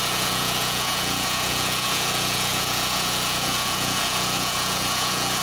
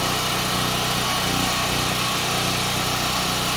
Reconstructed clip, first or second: first